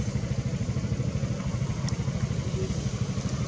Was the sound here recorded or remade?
recorded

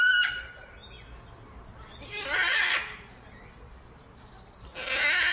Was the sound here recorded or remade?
recorded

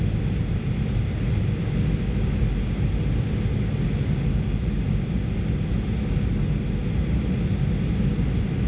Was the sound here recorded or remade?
recorded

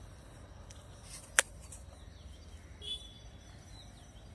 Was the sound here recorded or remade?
recorded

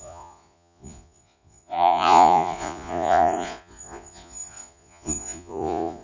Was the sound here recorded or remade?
remade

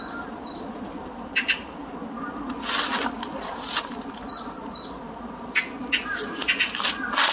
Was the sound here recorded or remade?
recorded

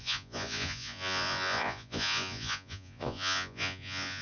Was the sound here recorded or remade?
remade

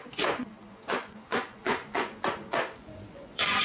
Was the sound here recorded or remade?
remade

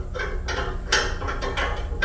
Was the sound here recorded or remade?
recorded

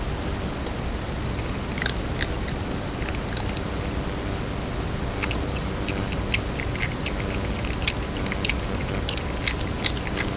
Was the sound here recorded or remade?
recorded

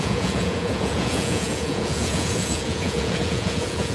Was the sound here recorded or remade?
remade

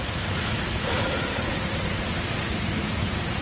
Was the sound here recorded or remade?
remade